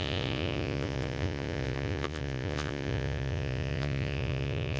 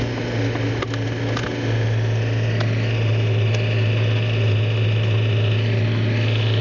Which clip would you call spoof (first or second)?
first